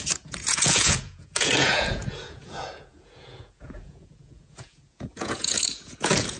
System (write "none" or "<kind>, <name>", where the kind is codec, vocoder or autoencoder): vocoder, Vocos